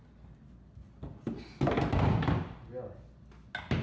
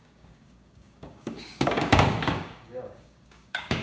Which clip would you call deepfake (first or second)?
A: second